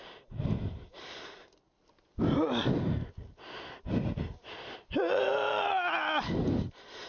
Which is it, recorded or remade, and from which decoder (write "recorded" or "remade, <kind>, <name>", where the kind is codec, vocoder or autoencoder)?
recorded